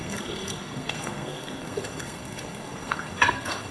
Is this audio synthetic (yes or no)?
yes